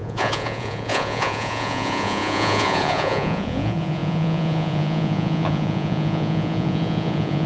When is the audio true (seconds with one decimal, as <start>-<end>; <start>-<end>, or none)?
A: none

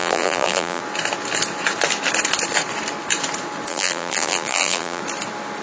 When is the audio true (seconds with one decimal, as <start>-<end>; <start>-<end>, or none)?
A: 0.8-3.7; 5.0-5.6

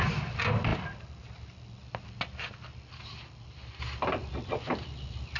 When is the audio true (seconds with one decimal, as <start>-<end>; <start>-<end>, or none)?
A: 0.7-3.8

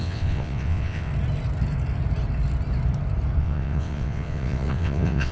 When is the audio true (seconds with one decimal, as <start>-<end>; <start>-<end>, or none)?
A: 1.1-3.4

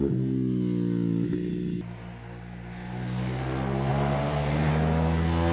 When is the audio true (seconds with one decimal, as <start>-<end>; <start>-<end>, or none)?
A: 0.0-3.9; 4.7-5.5

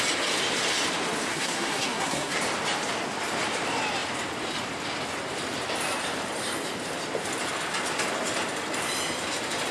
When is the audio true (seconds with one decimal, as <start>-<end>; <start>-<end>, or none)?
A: 0.0-1.3; 2.4-9.7